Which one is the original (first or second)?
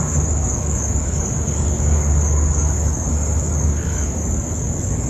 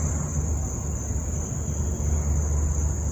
second